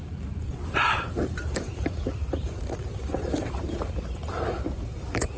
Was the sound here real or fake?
fake